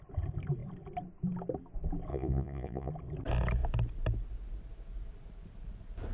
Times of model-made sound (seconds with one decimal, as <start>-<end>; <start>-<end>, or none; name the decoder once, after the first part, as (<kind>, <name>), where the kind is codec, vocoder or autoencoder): 2.1-2.9 (vocoder, Vocos)